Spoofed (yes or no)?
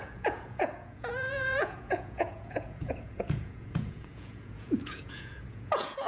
yes